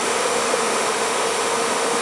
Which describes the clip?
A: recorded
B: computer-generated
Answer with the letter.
B